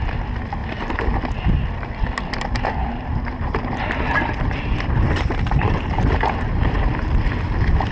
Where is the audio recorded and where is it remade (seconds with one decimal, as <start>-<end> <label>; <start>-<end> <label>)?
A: 0.0-2.8 recorded; 2.8-6.9 remade; 6.9-7.9 recorded